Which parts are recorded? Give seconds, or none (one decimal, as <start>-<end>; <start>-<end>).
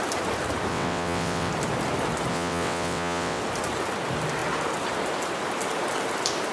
0.0-0.7; 1.5-2.3; 3.4-6.5